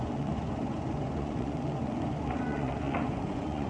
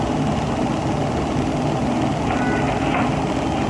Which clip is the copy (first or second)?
first